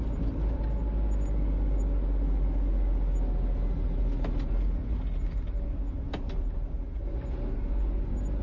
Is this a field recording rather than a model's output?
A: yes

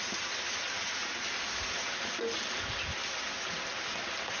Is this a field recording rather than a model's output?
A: yes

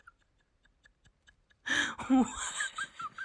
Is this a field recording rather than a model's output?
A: yes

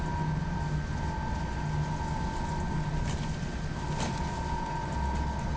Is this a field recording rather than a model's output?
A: yes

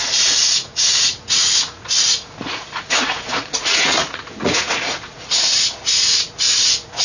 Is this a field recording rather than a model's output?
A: no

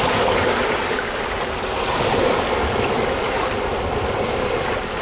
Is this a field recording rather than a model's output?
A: yes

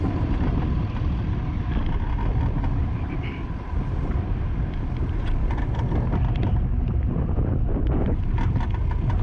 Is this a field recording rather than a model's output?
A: yes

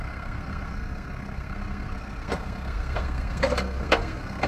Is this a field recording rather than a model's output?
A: no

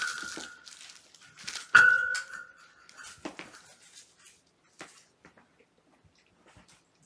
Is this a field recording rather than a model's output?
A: yes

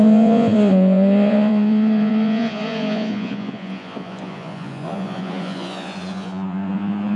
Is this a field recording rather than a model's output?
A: no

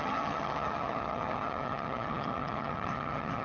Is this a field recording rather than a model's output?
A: no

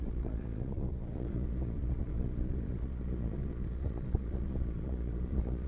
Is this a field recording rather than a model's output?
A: no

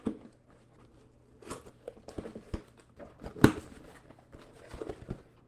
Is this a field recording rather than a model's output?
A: yes